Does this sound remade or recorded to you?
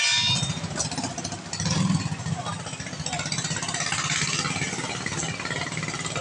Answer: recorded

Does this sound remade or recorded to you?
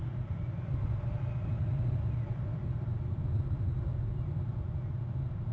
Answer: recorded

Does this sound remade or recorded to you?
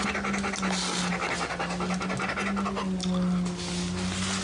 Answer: recorded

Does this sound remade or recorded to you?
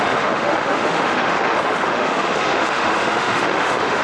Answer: remade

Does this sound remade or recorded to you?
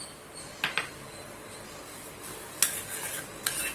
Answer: recorded